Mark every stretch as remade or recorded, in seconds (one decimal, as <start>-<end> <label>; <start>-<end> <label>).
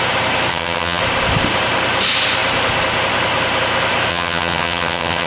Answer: 0.0-0.5 recorded; 0.5-1.0 remade; 1.0-4.1 recorded; 4.1-5.3 remade